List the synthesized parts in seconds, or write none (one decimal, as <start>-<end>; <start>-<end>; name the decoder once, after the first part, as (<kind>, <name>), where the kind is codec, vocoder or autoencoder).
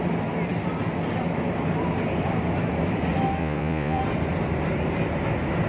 3.4-4.0 (vocoder, Vocos)